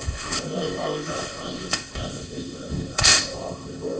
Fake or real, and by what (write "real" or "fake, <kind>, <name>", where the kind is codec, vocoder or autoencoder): fake, codec, ZipCodec